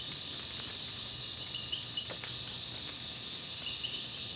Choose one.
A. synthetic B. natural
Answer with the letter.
B